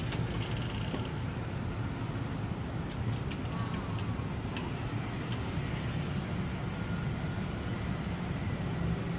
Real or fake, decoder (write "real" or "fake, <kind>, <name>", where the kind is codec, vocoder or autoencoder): real